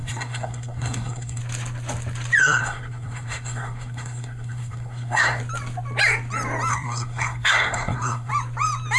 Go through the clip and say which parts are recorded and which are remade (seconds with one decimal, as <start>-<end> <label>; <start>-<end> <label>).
0.0-1.4 remade; 1.4-2.4 recorded; 2.4-5.4 remade; 5.4-6.7 recorded; 6.7-8.3 remade; 8.3-9.0 recorded